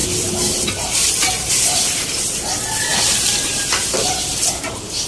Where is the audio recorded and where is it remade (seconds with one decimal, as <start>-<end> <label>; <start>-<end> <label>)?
0.0-5.1 recorded